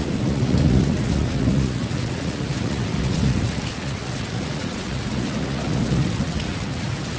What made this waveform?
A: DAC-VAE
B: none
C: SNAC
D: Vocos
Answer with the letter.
D